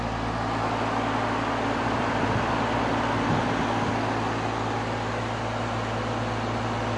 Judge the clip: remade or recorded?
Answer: recorded